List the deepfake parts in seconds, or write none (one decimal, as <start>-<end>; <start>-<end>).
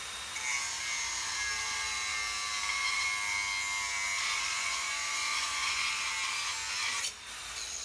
4.5-5.9